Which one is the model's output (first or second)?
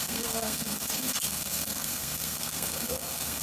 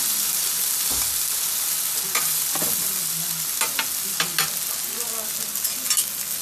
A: first